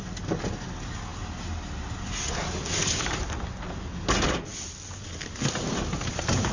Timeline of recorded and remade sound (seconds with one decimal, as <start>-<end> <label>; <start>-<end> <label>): 0.0-6.5 recorded